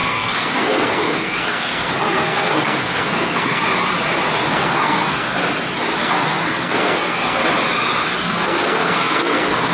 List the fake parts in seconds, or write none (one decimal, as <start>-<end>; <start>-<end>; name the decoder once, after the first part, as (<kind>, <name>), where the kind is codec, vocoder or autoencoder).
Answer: 0.0-3.6 (codec, SNAC); 4.4-5.4; 6.0-7.4; 8.2-9.7